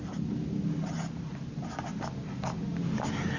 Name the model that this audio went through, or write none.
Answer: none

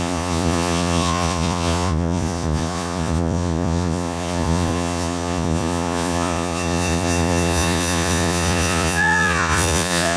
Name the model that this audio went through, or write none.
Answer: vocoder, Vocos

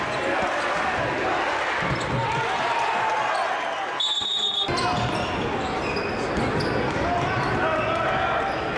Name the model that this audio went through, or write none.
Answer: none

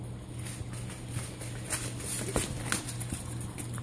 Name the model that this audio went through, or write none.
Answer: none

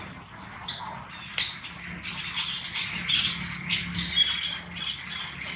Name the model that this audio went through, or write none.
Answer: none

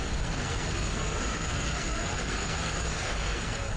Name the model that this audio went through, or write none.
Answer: codec, SNAC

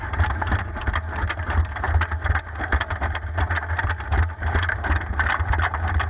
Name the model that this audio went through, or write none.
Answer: none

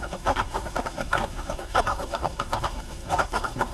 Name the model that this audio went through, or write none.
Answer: codec, SNAC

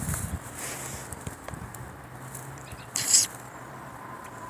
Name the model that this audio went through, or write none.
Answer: vocoder, BigVGAN v2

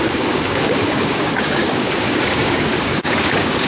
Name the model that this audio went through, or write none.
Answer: codec, DAC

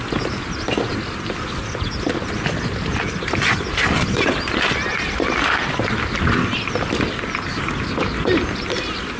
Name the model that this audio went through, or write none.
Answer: none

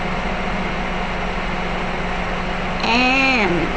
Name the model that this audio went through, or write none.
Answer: none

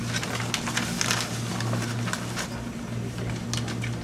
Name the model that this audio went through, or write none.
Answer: none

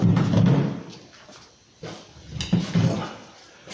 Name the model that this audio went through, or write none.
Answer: none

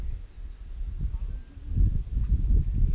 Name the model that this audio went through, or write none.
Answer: none